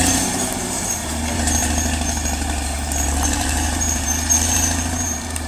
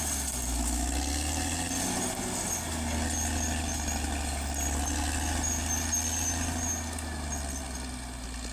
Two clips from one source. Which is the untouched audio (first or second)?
second